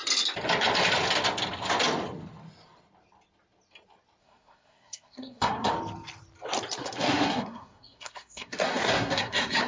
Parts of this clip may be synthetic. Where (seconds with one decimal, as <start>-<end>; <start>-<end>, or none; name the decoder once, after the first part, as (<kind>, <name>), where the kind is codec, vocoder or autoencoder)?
4.2-5.7 (codec, SNAC); 6.8-9.7